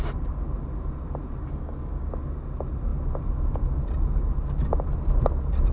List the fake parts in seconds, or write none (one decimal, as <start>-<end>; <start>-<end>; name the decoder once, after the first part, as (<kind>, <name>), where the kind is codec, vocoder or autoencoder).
1.4-2.1 (codec, DAC)